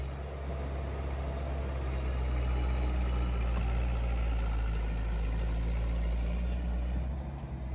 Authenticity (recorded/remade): recorded